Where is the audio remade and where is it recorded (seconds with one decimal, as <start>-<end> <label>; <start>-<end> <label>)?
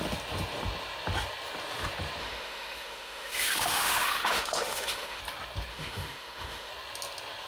0.0-2.2 recorded; 2.2-5.2 remade; 5.2-5.7 recorded; 5.7-6.7 remade; 6.7-7.5 recorded